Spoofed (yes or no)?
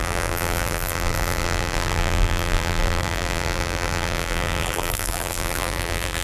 yes